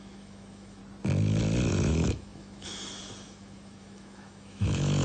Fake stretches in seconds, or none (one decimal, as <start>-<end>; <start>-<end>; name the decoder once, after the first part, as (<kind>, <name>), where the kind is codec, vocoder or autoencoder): 0.0-0.8 (autoencoder, DAC-VAE); 1.7-5.0